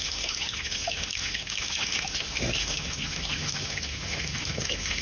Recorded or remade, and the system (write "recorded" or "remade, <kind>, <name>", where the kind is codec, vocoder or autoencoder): remade, autoencoder, DAC-VAE